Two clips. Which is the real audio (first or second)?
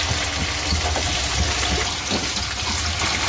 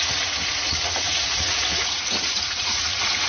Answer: first